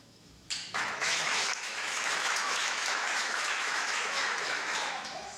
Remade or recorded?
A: remade